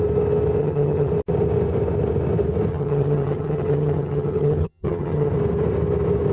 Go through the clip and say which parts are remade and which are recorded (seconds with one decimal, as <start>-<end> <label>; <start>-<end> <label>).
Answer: 0.0-0.6 recorded; 0.6-1.1 remade; 1.1-2.7 recorded; 2.7-5.3 remade; 5.3-6.3 recorded